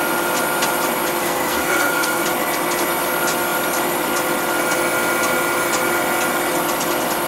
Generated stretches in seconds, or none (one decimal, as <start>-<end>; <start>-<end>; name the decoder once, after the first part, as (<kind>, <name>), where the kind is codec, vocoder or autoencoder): 1.2-2.2 (codec, SNAC)

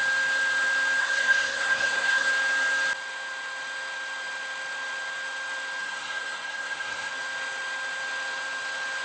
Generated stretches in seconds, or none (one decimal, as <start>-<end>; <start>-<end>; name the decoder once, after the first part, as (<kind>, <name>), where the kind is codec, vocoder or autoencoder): 1.0-2.3 (codec, SNAC); 5.8-7.1

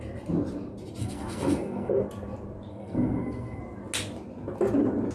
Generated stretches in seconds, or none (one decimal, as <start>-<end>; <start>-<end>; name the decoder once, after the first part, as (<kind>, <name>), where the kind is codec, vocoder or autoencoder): 1.0-1.9 (codec, SNAC); 2.7-3.6